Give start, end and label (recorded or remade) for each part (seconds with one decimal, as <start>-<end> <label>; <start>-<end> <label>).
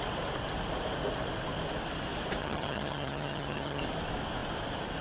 0.0-2.4 recorded; 2.4-3.8 remade; 3.8-5.0 recorded